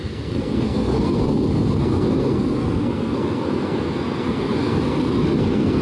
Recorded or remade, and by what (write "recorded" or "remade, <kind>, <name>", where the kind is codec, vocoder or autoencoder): remade, codec, SNAC